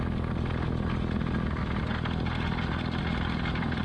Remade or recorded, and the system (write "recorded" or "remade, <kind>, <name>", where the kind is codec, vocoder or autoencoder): recorded